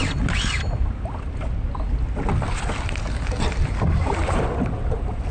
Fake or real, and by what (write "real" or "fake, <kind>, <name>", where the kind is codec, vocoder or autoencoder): real